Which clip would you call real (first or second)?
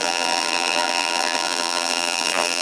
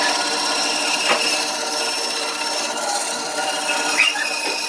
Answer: second